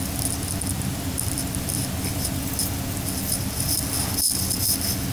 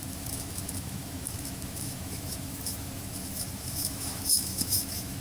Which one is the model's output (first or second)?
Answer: second